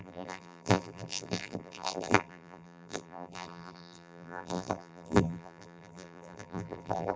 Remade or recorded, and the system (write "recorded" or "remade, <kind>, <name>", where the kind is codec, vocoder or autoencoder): remade, vocoder, BigVGAN v2